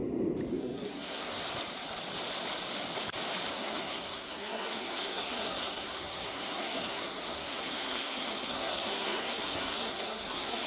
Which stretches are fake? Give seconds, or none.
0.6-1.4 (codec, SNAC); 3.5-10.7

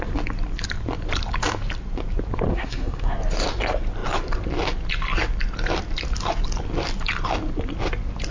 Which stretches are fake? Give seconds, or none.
2.5-3.1 (codec, SNAC)

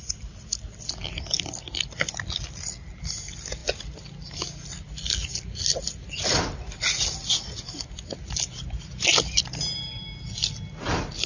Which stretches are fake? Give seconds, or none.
none